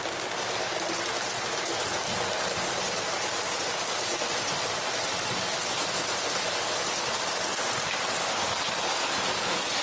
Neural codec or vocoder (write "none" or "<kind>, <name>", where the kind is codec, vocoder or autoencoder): none